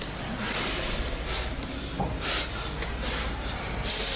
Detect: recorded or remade recorded